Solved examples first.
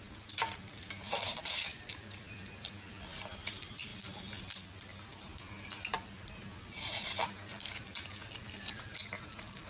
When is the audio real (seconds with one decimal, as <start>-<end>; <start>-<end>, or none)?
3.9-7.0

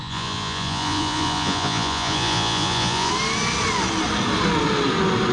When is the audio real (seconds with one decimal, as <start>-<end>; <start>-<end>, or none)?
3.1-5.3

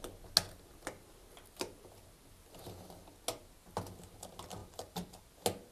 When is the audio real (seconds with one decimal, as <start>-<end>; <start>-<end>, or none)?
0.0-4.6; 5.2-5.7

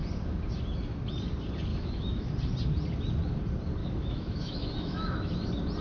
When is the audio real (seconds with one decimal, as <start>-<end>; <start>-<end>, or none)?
0.0-1.7; 2.3-3.8; 5.3-5.8

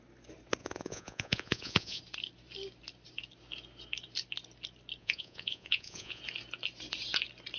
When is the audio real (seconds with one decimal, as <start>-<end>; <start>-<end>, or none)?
0.0-0.6; 2.0-5.0; 6.2-7.6

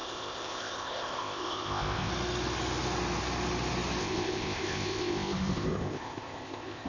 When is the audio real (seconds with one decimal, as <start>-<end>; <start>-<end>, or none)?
2.1-4.0